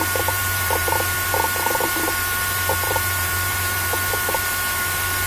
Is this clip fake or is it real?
fake